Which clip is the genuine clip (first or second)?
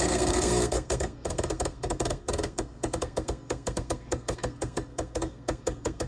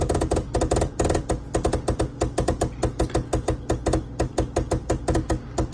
second